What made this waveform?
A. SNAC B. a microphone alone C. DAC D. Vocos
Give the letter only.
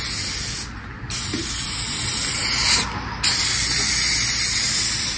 B